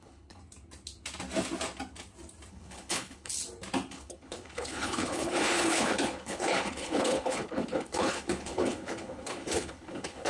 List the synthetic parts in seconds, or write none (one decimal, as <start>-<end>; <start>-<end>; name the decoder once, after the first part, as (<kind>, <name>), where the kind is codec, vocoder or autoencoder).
0.0-0.4 (codec, HILCodec); 2.5-3.3; 3.9-10.3